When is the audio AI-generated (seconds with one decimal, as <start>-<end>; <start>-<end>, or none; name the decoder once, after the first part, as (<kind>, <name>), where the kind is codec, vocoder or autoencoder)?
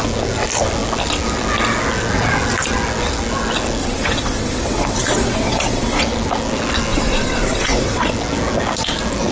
3.8-6.0 (vocoder, WaveNeXt); 6.9-8.1